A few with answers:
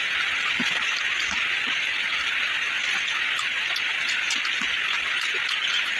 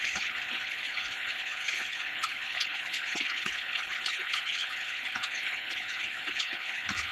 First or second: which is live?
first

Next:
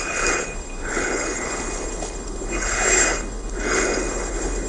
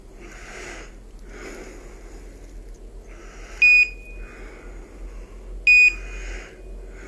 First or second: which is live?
second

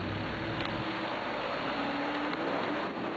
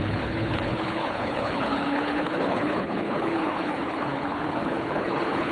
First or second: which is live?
first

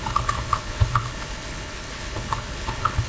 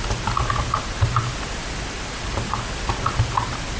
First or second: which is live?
second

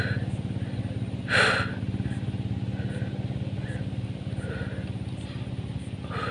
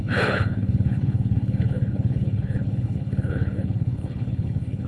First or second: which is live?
first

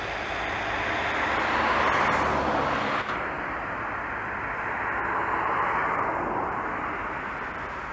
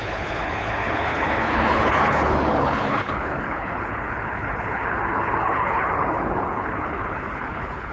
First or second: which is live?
first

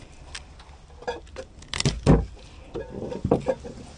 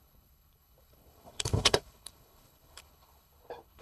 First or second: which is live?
first